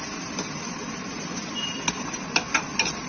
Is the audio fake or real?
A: real